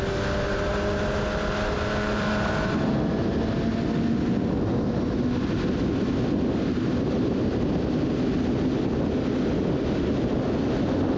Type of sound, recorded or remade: recorded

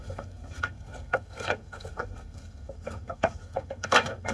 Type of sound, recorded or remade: remade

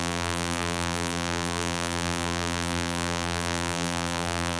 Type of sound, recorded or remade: remade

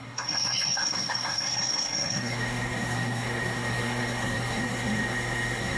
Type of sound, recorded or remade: remade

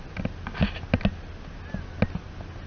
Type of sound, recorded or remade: recorded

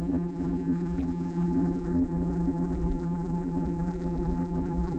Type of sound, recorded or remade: remade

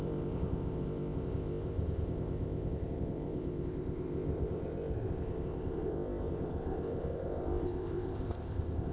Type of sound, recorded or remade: remade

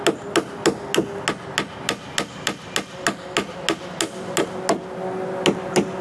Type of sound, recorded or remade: recorded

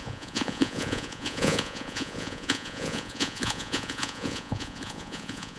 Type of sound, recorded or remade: remade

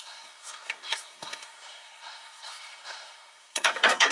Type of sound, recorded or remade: remade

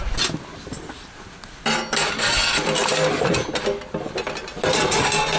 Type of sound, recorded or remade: recorded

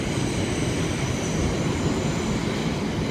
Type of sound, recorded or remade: recorded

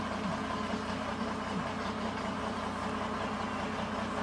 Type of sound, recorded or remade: recorded